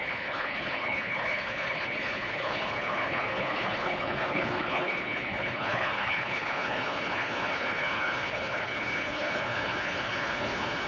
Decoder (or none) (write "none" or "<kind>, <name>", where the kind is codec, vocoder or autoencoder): codec, HILCodec